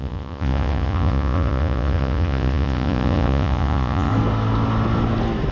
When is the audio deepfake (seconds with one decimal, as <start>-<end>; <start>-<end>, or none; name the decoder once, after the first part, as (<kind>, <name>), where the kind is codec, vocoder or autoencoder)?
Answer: 0.0-4.1 (vocoder, Vocos)